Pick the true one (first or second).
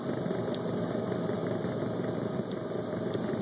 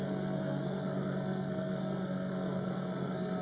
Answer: first